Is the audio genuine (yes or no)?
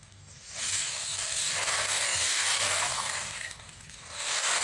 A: no